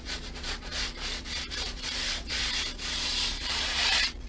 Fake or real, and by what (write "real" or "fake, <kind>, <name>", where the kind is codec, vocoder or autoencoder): fake, vocoder, Vocos